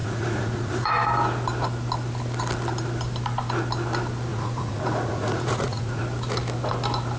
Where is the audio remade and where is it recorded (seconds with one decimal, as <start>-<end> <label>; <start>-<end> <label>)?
0.0-0.9 remade; 0.9-4.3 recorded; 4.3-6.0 remade; 6.0-7.2 recorded